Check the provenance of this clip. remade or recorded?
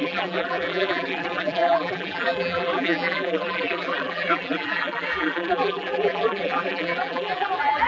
remade